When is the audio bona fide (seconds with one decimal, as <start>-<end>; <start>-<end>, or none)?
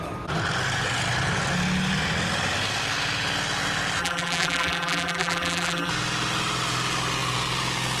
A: 0.0-4.0; 5.9-8.0